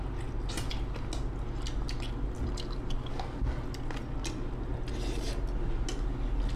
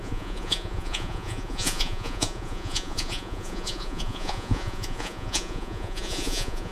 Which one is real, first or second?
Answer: first